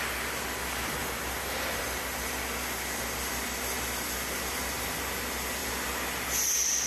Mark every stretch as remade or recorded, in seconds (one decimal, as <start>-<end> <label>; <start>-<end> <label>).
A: 0.0-6.9 recorded